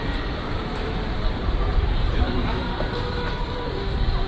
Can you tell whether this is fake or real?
fake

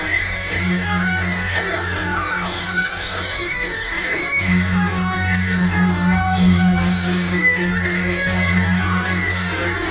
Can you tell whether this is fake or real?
fake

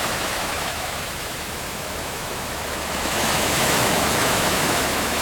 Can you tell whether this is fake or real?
fake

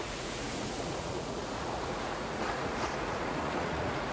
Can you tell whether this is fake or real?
fake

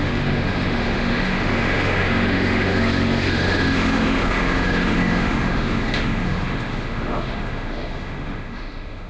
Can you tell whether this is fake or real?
fake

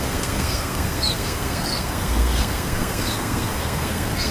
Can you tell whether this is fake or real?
fake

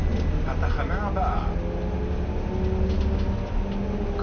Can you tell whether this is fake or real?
real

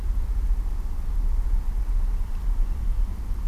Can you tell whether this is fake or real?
fake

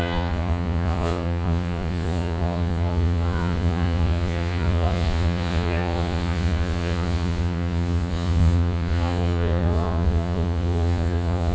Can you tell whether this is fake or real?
fake